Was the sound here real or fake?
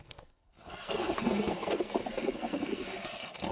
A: fake